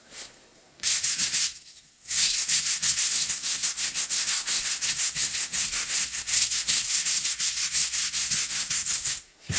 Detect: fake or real fake